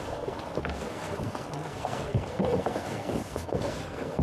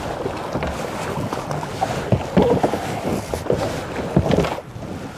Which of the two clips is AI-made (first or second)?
first